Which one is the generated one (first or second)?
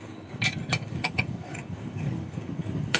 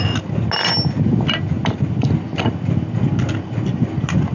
first